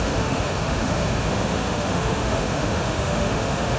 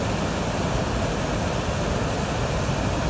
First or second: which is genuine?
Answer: second